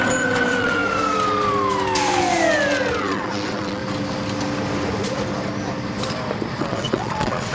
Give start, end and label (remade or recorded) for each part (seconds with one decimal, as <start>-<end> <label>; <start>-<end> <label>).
0.0-0.8 remade; 0.8-3.0 recorded; 3.0-3.8 remade; 3.8-6.6 recorded; 6.6-7.5 remade